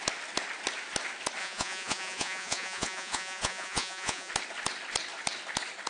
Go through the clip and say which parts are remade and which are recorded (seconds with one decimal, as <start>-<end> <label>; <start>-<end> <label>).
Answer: 0.0-1.4 recorded; 1.4-4.3 remade; 4.3-5.9 recorded